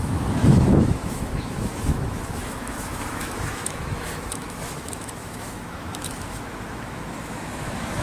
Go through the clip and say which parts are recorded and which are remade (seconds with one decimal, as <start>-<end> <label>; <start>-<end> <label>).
0.0-8.0 remade